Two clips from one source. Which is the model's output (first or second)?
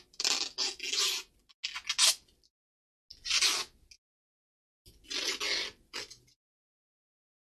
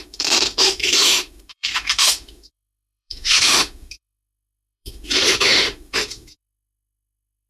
second